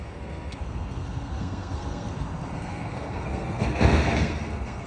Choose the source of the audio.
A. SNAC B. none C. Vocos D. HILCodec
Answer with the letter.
A